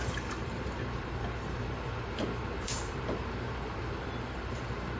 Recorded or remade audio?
remade